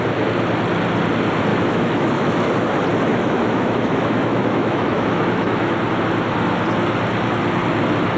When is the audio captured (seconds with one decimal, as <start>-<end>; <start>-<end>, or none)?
0.0-1.5; 2.5-3.1; 5.7-8.2